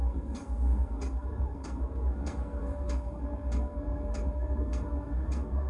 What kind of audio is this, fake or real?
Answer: fake